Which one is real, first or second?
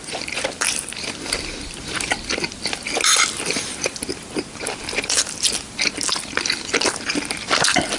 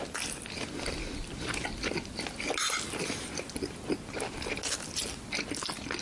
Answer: second